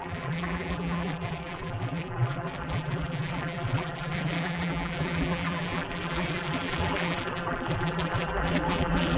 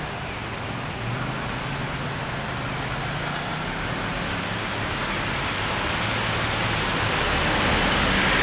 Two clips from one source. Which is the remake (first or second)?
first